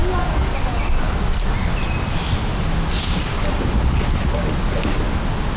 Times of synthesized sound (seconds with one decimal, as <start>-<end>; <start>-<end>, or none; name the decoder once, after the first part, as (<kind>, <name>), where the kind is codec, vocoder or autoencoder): none